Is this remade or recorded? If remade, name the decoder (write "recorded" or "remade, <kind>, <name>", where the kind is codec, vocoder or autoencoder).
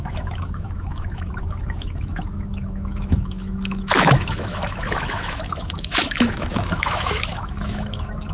remade, autoencoder, DAC-VAE